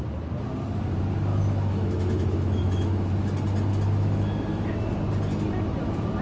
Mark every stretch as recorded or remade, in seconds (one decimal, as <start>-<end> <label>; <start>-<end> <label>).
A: 0.0-1.3 recorded; 1.3-3.1 remade; 3.1-3.7 recorded; 3.7-4.8 remade; 4.8-6.2 recorded